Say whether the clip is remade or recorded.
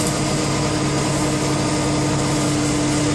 recorded